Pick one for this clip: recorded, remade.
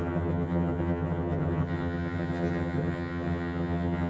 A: remade